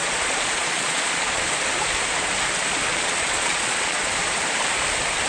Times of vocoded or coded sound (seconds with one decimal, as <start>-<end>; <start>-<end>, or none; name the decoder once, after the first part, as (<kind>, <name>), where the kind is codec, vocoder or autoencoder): 0.0-1.5 (vocoder, Vocos); 2.9-4.1